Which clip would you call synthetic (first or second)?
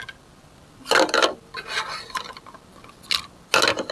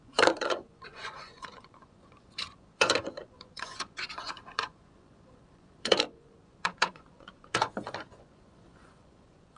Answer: second